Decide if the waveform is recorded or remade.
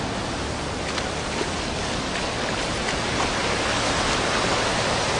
recorded